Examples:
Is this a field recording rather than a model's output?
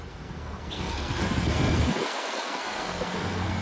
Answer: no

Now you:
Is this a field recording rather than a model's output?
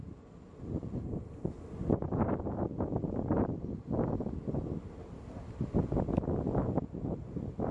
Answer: yes